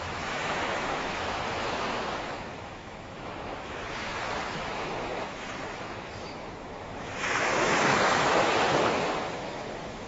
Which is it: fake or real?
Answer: fake